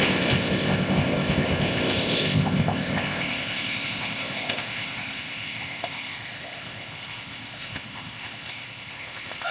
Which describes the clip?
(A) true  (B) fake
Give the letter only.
B